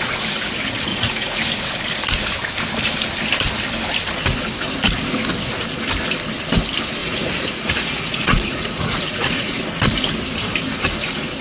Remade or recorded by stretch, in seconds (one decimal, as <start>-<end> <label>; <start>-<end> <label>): 0.0-0.9 recorded; 0.9-1.4 remade; 1.4-7.0 recorded; 7.0-9.6 remade; 9.6-11.4 recorded